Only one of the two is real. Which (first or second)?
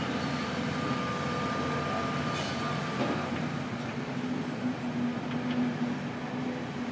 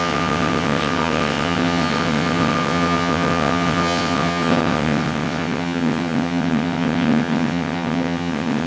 first